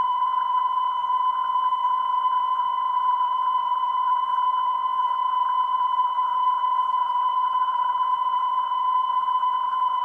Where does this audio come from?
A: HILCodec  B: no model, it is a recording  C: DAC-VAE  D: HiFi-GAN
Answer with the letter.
A